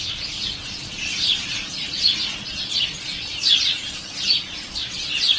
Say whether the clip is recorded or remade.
remade